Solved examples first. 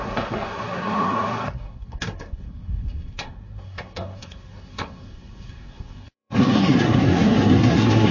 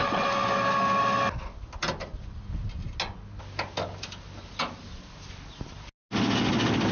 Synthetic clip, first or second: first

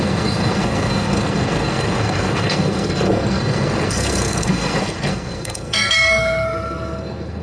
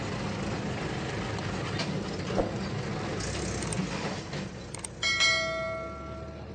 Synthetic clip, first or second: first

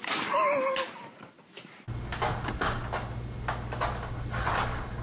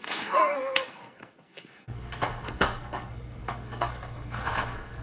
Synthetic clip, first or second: second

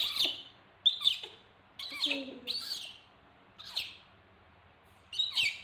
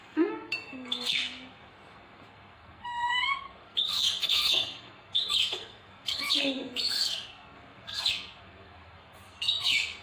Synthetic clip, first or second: second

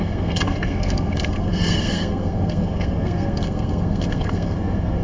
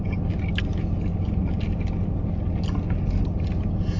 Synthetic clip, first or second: first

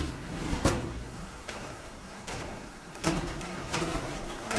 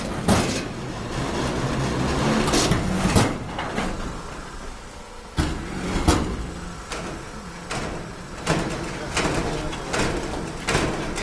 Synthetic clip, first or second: first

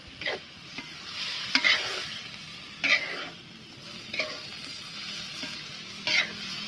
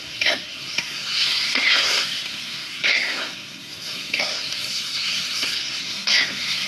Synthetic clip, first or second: second